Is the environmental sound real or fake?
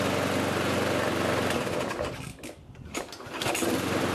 real